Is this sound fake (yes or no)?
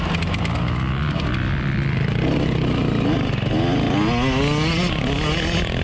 no